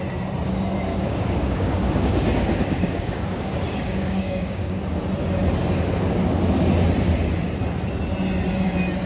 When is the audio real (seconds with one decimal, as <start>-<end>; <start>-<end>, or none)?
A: 0.0-0.9; 5.0-9.1

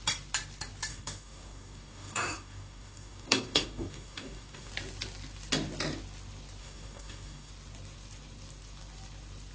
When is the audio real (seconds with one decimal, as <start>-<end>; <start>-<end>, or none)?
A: 0.0-0.9; 4.7-6.6; 7.5-9.5

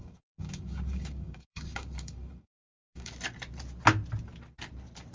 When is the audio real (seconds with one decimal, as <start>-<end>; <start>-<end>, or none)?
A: 3.1-5.1